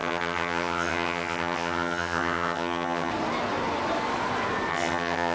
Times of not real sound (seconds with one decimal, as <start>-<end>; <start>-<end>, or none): 0.0-3.1; 4.7-5.3